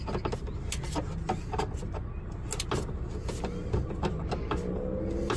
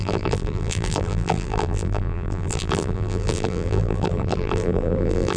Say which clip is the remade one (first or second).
second